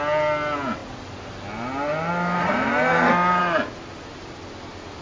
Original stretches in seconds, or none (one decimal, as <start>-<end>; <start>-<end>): 0.0-5.0